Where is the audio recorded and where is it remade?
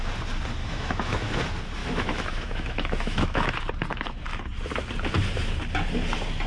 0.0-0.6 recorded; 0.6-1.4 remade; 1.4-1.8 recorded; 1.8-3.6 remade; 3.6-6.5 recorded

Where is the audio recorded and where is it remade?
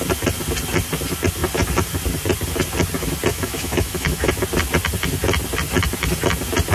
0.0-3.3 recorded; 3.3-4.3 remade; 4.3-6.7 recorded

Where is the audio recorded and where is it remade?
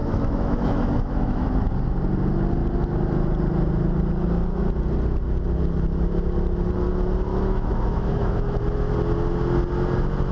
0.0-1.7 remade; 1.7-7.3 recorded; 7.3-8.6 remade; 8.6-10.3 recorded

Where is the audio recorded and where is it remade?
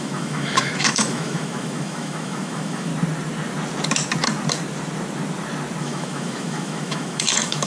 0.0-2.9 remade; 2.9-5.8 recorded; 5.8-7.7 remade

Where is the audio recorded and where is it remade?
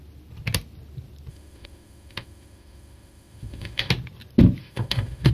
0.0-1.3 recorded; 1.3-3.9 remade; 3.9-4.6 recorded; 4.6-5.3 remade